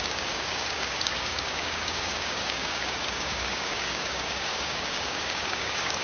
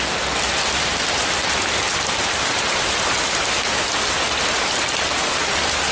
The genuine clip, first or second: second